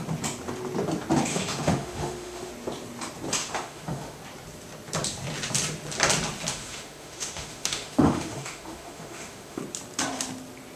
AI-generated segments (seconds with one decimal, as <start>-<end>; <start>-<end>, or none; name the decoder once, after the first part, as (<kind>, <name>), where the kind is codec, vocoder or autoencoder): 1.3-2.5 (autoencoder, DAC-VAE); 3.4-4.2; 6.5-9.6